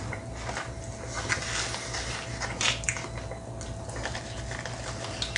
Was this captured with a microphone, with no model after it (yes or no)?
yes